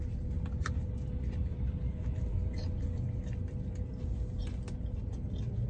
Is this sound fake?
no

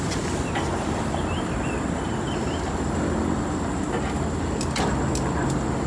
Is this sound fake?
no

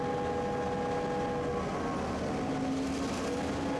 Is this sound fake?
no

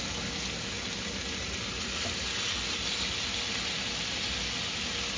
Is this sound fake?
no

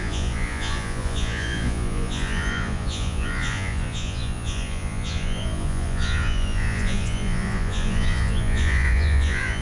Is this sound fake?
yes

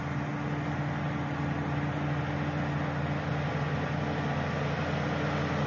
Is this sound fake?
no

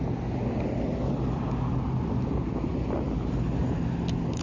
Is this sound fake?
no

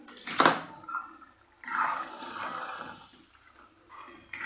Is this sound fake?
no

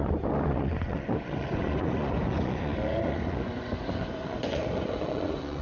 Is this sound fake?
yes